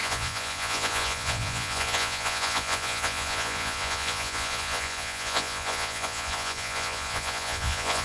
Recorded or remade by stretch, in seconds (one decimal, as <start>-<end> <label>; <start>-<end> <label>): 0.0-8.0 remade